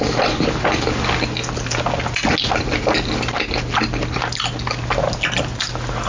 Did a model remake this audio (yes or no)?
no